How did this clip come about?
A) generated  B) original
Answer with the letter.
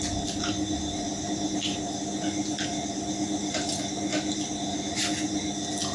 B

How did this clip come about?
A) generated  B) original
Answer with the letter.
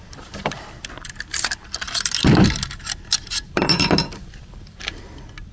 B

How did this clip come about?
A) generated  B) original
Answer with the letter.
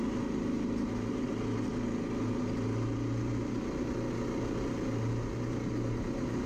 B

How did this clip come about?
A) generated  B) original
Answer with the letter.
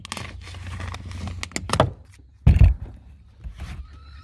B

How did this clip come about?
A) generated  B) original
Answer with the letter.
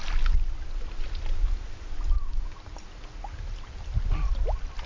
B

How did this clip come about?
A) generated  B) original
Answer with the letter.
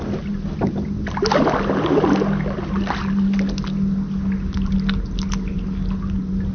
B